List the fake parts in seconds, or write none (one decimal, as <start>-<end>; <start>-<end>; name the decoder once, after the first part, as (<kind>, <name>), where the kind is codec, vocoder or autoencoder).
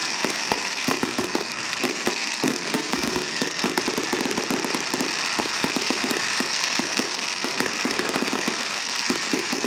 0.0-3.8 (codec, SNAC); 5.4-9.7